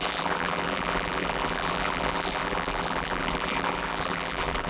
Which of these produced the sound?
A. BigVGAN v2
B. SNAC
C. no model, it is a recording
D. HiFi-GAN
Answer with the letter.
A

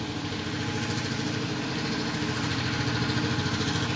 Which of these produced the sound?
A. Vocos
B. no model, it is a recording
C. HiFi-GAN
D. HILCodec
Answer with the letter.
B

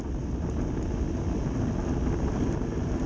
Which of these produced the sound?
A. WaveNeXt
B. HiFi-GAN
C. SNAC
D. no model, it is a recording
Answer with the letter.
D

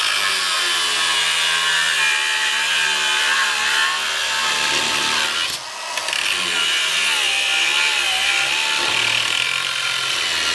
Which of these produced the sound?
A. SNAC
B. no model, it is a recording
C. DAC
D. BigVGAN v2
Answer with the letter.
B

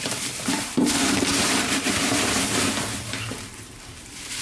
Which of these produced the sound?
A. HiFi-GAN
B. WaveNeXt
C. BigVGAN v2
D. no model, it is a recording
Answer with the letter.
C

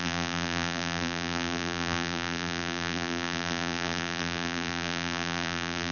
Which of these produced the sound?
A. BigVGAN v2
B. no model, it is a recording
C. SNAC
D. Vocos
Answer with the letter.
A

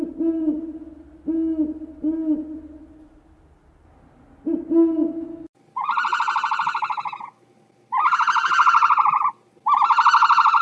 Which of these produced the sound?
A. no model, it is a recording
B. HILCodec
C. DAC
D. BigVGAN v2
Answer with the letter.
A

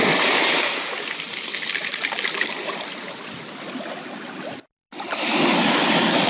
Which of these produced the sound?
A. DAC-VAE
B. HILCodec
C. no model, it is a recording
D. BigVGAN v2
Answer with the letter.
C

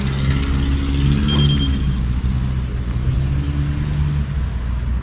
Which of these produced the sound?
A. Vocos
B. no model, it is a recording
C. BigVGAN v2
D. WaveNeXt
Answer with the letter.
B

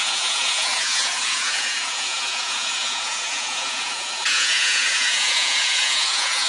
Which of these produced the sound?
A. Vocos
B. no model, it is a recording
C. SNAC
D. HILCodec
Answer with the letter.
A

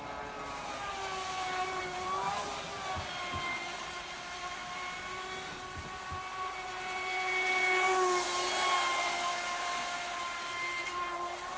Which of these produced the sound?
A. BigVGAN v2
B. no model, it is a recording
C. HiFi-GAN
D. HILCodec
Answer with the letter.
B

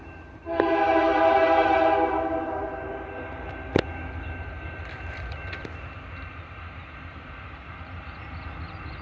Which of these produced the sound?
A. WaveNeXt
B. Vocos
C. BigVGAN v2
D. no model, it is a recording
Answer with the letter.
C